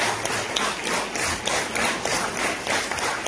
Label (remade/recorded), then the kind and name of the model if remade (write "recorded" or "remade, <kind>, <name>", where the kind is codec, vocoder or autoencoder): recorded